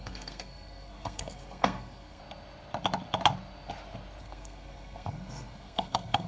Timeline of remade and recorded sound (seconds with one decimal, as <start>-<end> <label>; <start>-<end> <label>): 0.0-2.2 remade; 2.2-4.2 recorded; 4.2-6.3 remade